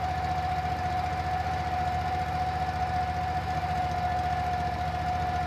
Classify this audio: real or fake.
real